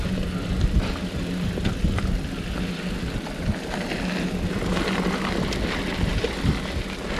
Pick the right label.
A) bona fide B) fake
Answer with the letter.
A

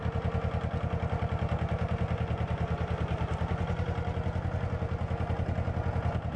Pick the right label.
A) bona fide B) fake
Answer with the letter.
A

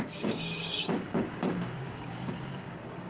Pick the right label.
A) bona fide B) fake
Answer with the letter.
B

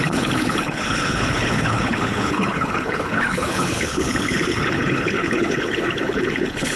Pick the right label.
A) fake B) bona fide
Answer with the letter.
A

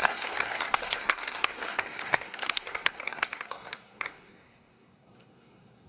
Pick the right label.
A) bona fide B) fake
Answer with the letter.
B